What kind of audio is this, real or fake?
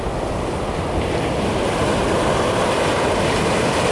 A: real